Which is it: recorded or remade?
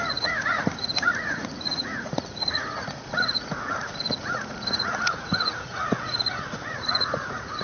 remade